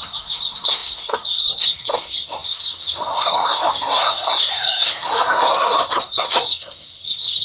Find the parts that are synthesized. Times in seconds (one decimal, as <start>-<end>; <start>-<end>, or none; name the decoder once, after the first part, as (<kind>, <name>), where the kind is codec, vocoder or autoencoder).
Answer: 0.0-7.4 (codec, SNAC)